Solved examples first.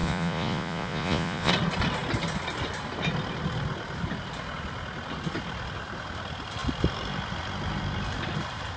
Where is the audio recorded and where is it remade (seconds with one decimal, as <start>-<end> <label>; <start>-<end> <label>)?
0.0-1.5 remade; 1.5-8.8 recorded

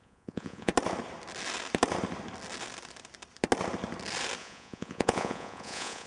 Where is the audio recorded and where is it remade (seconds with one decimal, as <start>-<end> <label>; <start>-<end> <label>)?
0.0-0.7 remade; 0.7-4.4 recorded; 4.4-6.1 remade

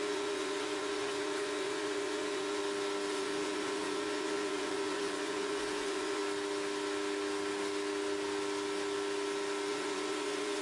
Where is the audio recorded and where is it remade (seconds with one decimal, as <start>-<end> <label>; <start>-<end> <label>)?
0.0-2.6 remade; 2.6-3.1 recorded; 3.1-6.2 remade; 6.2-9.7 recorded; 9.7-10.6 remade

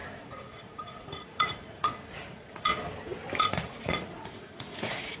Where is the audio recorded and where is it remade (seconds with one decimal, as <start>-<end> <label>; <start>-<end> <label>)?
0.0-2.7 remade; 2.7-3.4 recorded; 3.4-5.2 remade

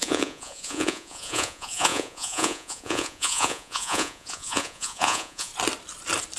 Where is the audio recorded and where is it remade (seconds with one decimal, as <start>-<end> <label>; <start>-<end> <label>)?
0.0-5.5 remade; 5.5-6.4 recorded